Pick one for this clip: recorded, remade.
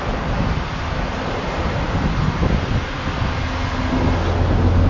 recorded